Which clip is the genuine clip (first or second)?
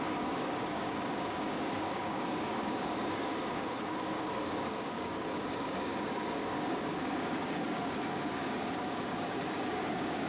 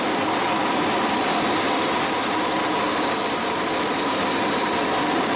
second